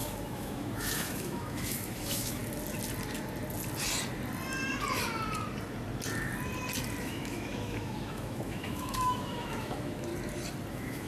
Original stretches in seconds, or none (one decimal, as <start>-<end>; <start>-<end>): 2.4-7.0; 10.1-10.7